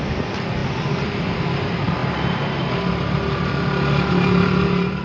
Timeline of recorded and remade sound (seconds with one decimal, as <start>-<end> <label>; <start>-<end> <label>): 0.0-5.0 recorded